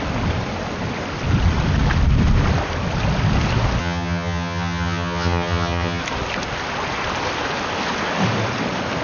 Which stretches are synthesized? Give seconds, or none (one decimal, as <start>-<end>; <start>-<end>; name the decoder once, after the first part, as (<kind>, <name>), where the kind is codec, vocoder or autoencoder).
3.8-6.0 (vocoder, HiFi-GAN)